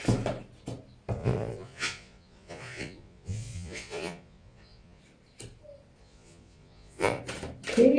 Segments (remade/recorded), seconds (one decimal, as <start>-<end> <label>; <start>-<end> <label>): 0.0-1.2 recorded; 1.2-5.0 remade; 5.0-6.0 recorded; 6.0-7.2 remade; 7.2-8.0 recorded